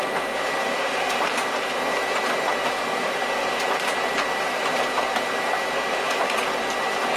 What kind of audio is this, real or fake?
fake